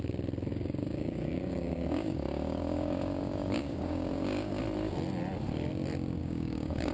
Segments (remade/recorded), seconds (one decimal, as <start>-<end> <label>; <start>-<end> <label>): 0.0-0.5 recorded; 0.5-4.6 remade; 4.6-6.2 recorded; 6.2-6.9 remade